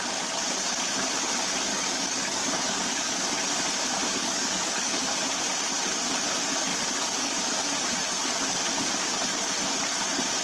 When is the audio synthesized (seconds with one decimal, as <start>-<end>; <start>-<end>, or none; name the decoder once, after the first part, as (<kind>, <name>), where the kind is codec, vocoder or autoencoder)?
1.7-3.4 (codec, DAC); 4.2-5.0; 6.7-7.4